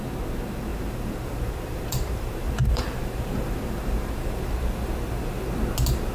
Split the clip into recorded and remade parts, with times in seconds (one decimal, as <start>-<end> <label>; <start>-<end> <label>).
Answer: 0.0-0.7 recorded; 0.7-4.4 remade; 4.4-6.1 recorded